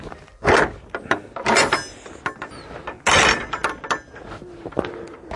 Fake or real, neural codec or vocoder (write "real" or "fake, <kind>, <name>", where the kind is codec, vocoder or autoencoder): real